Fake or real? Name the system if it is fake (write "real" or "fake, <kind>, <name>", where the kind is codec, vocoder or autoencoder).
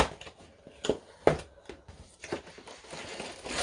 real